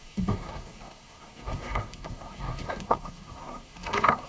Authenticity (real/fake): fake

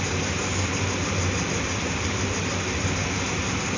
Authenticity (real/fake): real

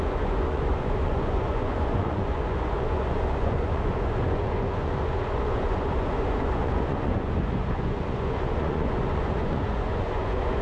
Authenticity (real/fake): fake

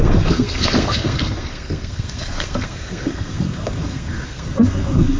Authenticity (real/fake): fake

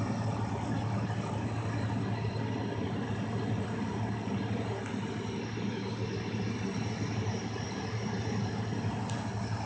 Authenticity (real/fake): real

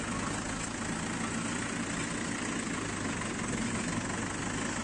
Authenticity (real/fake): real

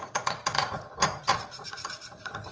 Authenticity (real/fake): fake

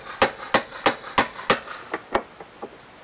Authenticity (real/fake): real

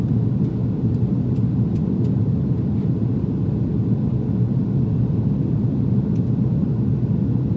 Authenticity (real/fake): real